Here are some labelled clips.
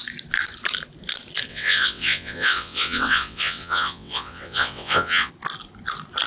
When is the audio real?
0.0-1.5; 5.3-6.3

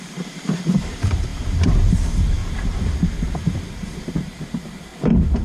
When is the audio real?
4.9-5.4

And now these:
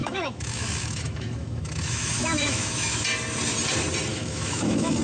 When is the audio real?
3.0-4.1